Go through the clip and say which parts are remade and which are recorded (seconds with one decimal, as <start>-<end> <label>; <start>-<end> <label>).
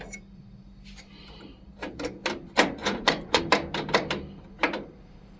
0.0-2.8 recorded; 2.8-3.4 remade; 3.4-5.4 recorded